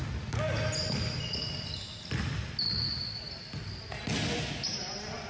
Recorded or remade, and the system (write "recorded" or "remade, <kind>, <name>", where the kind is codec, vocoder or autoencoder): recorded